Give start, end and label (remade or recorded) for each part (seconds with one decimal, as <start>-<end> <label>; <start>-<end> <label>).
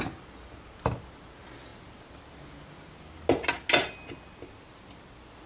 0.0-5.5 recorded